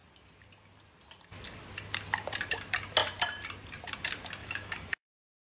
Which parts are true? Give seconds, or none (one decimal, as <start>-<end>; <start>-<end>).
0.0-4.4